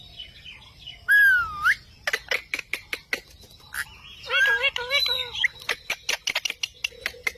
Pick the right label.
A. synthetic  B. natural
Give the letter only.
B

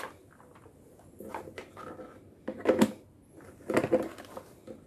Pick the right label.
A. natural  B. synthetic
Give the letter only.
A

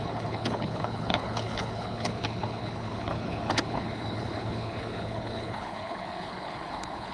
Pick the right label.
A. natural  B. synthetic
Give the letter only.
B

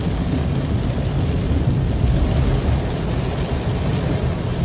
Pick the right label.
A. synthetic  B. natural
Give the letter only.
B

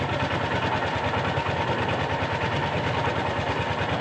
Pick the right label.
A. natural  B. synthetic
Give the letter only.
A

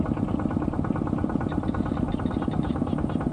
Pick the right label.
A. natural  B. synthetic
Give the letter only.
A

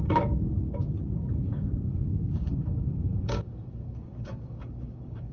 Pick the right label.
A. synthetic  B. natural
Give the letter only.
A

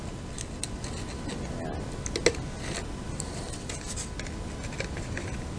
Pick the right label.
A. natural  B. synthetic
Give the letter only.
A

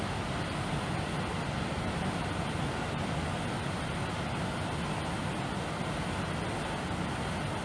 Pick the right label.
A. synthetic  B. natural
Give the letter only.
B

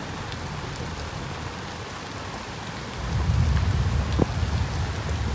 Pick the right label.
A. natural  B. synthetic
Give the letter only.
A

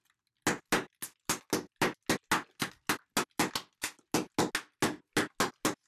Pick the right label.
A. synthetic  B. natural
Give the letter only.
B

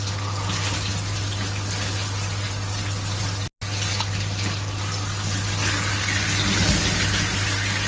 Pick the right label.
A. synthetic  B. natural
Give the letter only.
B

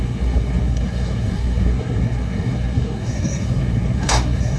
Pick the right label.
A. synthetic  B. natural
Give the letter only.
A